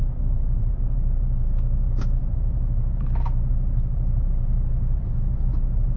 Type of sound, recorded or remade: remade